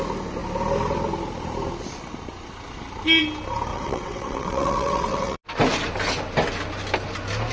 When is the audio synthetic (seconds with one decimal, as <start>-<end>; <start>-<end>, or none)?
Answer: 3.7-5.4